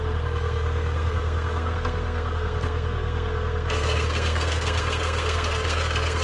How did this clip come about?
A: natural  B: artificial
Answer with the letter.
B